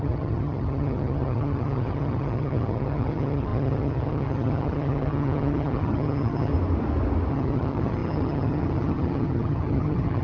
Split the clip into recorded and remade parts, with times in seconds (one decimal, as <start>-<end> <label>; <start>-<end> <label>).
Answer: 0.0-6.5 remade; 6.5-7.3 recorded; 7.3-10.2 remade